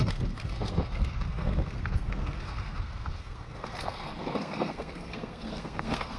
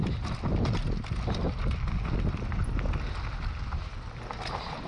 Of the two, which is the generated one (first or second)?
first